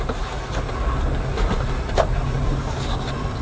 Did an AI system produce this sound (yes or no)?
no